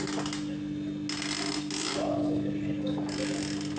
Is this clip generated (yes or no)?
no